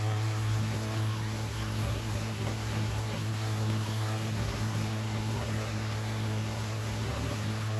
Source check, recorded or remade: remade